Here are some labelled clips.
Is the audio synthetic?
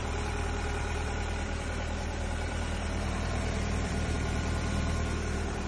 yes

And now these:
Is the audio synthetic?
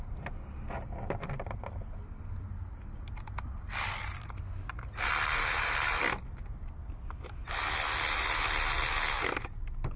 no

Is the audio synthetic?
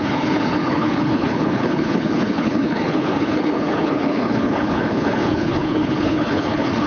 yes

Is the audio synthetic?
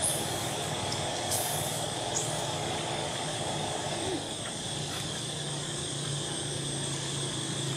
yes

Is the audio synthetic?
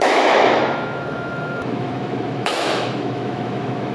yes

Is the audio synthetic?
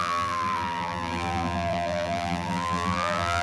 yes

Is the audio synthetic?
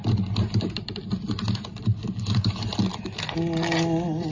no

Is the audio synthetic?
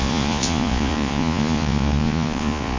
yes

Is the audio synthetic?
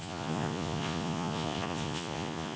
yes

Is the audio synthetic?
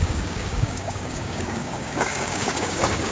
yes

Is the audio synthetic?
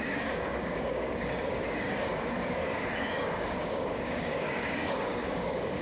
yes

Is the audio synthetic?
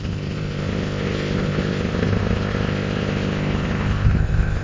yes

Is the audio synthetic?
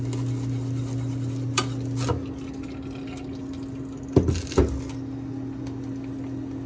no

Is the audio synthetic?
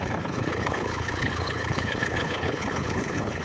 yes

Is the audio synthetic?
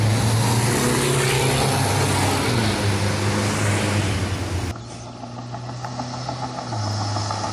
no